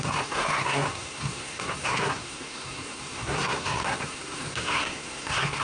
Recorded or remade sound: remade